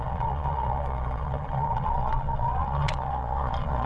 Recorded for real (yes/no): no